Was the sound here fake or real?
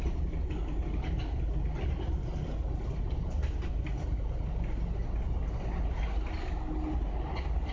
real